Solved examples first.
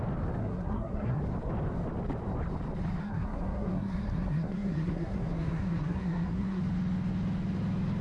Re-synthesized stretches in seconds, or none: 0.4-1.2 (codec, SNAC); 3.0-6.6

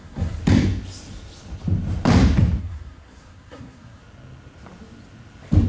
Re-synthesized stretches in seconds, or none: 0.0-0.4 (codec, SNAC); 2.6-4.0

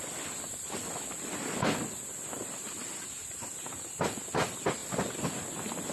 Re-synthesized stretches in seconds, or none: none